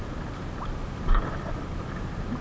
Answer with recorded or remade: recorded